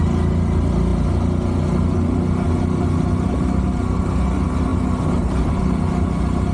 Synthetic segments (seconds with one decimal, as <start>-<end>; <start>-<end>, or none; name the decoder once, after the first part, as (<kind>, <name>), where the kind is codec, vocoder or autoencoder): none